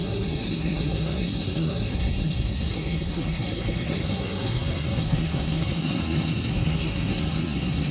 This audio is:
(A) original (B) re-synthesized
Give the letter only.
B